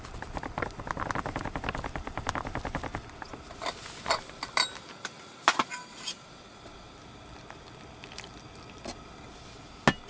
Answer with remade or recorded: recorded